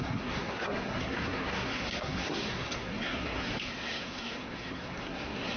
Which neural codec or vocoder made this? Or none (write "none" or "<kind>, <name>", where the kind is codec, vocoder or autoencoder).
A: codec, SNAC